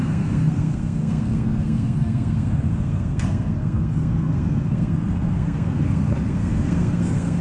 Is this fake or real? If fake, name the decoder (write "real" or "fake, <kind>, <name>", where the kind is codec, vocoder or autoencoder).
fake, codec, SNAC